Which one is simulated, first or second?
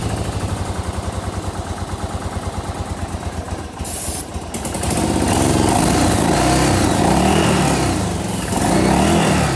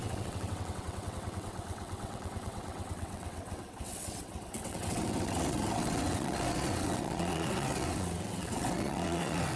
second